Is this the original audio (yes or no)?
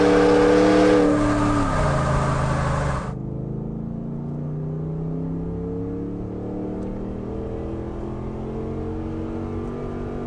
yes